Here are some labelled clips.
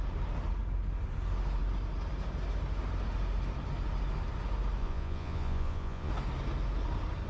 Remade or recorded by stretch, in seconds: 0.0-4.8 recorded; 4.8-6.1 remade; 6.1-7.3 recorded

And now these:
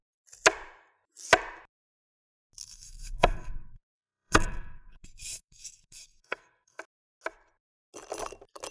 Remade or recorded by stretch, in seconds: 0.0-2.6 recorded; 2.6-6.8 remade; 6.8-8.7 recorded

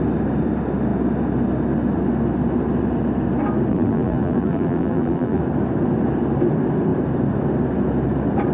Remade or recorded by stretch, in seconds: 0.0-3.7 recorded; 3.7-5.4 remade; 5.4-8.5 recorded

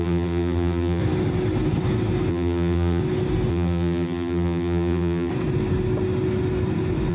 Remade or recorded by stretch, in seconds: 0.0-1.0 remade; 1.0-2.3 recorded; 2.3-3.0 remade; 3.0-3.5 recorded; 3.5-5.3 remade; 5.3-7.1 recorded

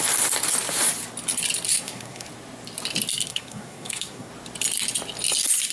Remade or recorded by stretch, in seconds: 0.0-1.7 recorded; 1.7-2.3 remade; 2.3-3.3 recorded; 3.3-4.3 remade; 4.3-5.7 recorded